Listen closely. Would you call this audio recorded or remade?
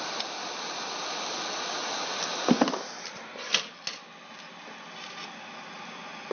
recorded